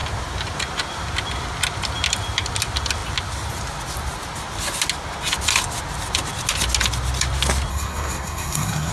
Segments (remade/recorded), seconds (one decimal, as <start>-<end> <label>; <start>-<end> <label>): 0.0-7.7 recorded; 7.7-8.9 remade